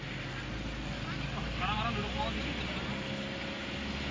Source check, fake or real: real